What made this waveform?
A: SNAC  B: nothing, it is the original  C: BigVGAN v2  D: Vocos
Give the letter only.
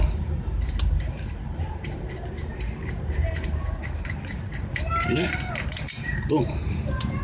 C